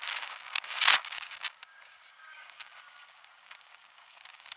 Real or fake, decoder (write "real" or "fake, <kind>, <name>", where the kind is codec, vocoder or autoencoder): fake, codec, DAC